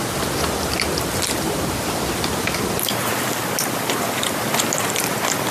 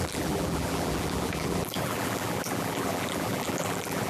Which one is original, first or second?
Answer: first